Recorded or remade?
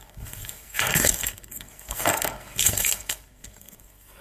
remade